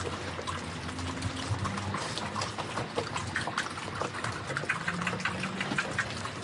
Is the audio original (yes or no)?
yes